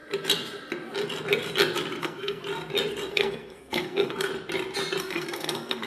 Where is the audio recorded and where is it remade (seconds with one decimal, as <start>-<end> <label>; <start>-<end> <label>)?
0.0-2.0 recorded; 2.0-2.4 remade; 2.4-3.1 recorded; 3.1-4.3 remade; 4.3-5.0 recorded; 5.0-5.9 remade